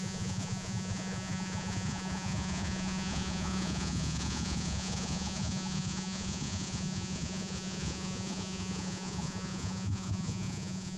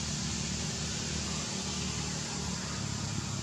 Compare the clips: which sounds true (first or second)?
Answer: second